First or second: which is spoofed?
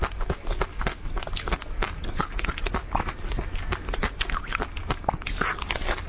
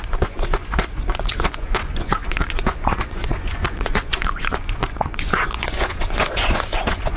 second